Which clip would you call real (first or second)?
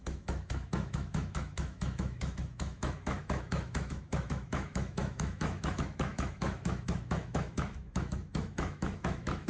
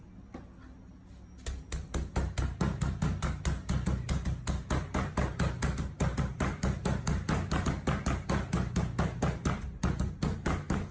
second